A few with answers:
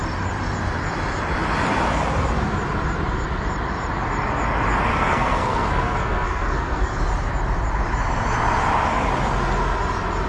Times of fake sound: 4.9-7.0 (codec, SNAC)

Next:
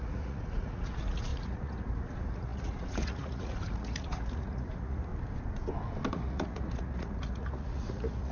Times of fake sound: 0.0-5.1 (vocoder, Vocos); 6.1-8.3